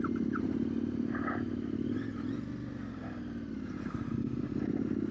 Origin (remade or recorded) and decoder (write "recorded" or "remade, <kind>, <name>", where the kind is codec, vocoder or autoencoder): recorded